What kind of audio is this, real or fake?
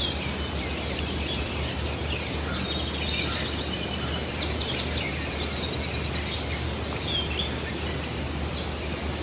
real